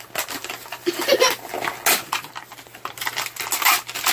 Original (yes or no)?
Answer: yes